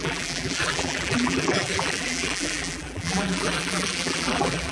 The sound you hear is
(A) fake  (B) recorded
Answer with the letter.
A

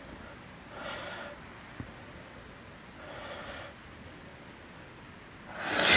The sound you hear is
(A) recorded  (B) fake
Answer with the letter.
A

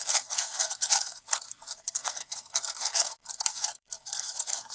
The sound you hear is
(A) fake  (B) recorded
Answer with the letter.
A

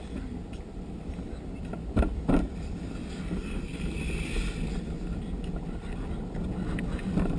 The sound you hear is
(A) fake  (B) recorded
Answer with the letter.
B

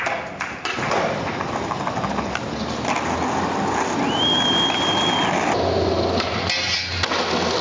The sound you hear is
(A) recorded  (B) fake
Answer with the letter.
A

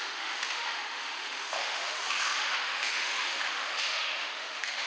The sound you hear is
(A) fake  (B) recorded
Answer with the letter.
A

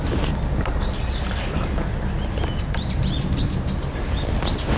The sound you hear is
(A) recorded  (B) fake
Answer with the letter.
A